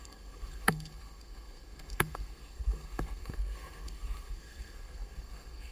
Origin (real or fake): fake